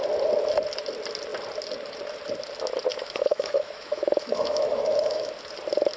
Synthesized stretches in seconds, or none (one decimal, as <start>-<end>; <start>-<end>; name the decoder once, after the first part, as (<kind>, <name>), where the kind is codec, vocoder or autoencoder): 2.9-5.3 (autoencoder, DAC-VAE)